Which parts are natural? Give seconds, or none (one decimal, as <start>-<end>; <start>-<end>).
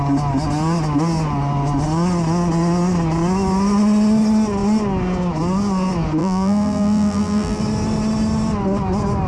0.0-6.2; 7.6-9.3